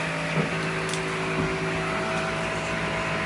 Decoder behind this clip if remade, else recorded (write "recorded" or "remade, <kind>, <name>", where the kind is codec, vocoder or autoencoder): recorded